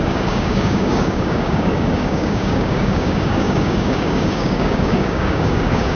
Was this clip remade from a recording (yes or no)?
yes